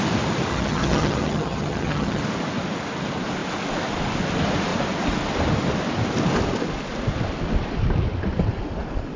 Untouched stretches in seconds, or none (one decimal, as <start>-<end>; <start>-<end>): 0.0-0.5; 2.2-9.2